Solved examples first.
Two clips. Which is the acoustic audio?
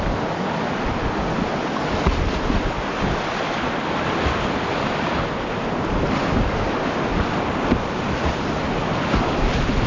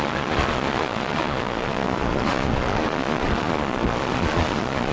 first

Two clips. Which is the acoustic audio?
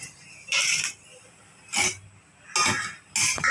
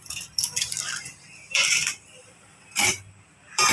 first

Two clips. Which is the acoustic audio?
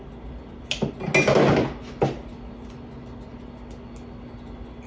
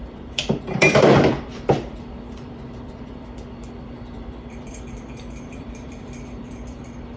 first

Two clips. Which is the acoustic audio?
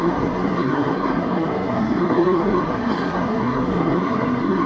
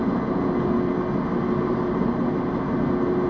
second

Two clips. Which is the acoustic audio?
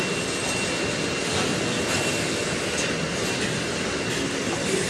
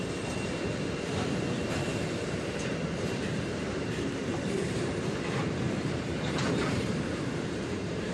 first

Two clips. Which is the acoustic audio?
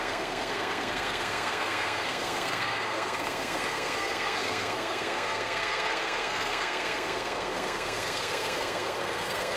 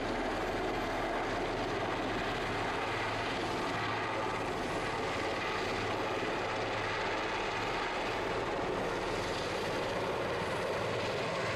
second